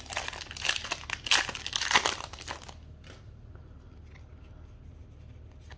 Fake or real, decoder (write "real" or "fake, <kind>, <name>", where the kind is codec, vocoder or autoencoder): real